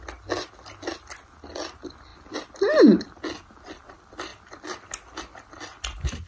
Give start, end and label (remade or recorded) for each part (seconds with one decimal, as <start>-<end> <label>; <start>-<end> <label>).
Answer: 0.0-6.3 recorded